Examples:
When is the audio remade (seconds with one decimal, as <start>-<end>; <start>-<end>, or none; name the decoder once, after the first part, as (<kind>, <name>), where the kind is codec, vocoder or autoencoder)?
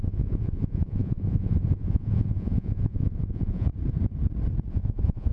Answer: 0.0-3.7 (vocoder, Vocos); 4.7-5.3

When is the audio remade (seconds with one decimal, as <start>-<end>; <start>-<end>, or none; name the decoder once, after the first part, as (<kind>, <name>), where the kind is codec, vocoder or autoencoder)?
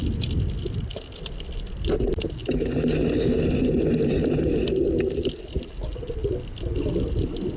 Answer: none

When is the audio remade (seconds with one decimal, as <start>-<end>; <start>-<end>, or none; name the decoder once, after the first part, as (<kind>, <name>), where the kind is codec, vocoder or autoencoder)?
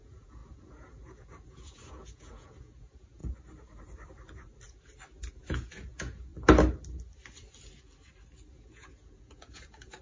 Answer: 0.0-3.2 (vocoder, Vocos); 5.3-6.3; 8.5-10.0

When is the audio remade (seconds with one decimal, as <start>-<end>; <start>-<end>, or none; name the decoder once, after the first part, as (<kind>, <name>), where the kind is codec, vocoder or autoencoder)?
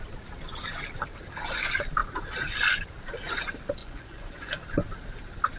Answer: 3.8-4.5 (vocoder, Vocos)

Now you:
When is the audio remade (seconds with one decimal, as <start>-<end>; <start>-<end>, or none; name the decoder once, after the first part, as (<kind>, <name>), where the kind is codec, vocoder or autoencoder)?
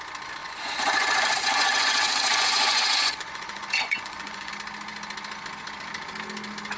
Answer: 0.4-4.5 (vocoder, Vocos)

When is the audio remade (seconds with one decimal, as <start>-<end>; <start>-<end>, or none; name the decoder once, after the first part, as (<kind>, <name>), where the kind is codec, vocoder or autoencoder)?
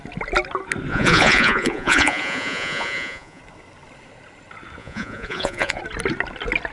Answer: 0.9-3.4 (vocoder, Vocos); 4.8-5.8